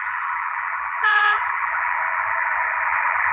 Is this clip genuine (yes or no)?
no